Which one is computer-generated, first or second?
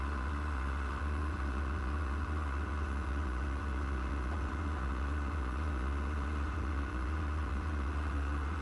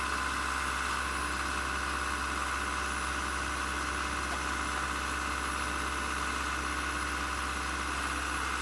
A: first